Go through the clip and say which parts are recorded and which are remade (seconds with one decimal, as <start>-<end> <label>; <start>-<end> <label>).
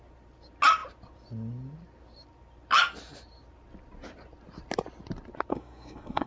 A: 0.0-5.5 recorded; 5.5-6.3 remade